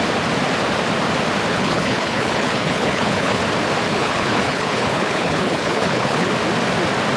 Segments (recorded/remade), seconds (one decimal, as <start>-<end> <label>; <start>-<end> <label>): 0.0-1.5 recorded; 1.5-3.4 remade; 3.4-3.9 recorded; 3.9-6.3 remade; 6.3-7.2 recorded